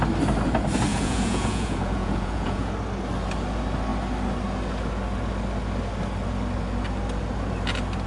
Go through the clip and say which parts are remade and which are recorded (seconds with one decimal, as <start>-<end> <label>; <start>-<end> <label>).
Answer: 0.0-0.9 recorded; 0.9-2.7 remade; 2.7-8.1 recorded